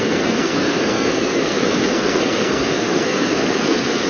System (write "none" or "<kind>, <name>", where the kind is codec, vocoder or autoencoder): codec, SNAC